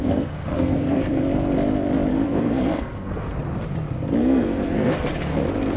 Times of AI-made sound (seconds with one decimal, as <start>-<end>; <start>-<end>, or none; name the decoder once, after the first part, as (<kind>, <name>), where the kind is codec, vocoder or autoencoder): 0.0-1.2 (codec, SNAC); 2.1-3.4; 4.2-4.9